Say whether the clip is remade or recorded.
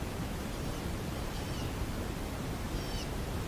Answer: remade